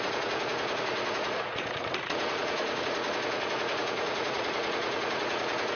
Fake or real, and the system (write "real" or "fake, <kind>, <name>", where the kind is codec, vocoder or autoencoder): fake, vocoder, Vocos